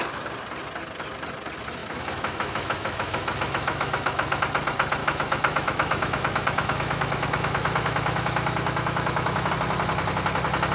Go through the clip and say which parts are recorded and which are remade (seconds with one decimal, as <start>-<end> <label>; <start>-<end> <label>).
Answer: 0.0-1.8 recorded; 1.8-4.4 remade; 4.4-5.0 recorded; 5.0-9.5 remade; 9.5-10.7 recorded